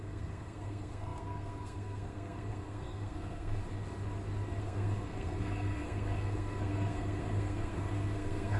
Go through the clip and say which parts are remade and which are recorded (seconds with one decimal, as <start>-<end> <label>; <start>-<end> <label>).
0.0-3.6 remade; 3.6-4.6 recorded; 4.6-8.6 remade